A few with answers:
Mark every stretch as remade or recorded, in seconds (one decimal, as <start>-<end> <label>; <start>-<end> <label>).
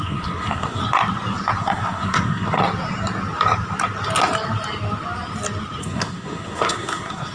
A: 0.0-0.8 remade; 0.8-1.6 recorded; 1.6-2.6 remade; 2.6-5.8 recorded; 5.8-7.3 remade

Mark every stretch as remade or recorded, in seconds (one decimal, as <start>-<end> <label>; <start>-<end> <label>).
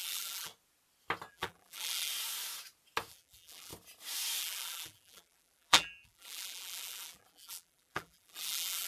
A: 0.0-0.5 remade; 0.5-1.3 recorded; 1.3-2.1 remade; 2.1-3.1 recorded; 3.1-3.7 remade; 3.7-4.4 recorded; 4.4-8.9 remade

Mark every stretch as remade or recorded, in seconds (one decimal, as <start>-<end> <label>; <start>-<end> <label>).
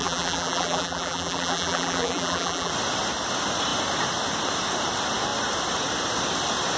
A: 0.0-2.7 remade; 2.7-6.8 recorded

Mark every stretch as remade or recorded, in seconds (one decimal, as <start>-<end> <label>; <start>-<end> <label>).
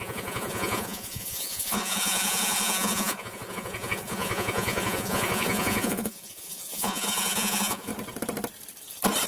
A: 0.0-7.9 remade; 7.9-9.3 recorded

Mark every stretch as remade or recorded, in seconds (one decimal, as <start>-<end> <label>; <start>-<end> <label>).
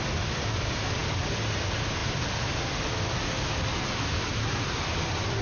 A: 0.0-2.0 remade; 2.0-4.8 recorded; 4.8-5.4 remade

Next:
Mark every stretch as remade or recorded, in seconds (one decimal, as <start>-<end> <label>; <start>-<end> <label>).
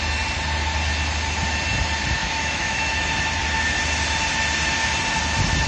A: 0.0-2.2 recorded; 2.2-2.9 remade; 2.9-5.7 recorded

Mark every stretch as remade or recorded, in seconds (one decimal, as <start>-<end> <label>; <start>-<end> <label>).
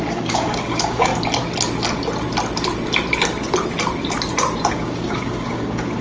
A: 0.0-1.1 remade; 1.1-4.7 recorded; 4.7-6.0 remade